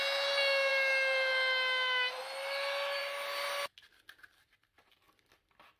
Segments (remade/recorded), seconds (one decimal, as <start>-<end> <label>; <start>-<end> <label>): 0.0-5.8 recorded